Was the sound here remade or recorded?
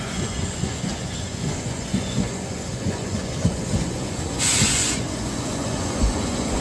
remade